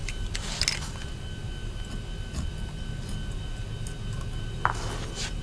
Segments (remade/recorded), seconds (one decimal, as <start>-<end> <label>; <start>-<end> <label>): 0.0-5.4 recorded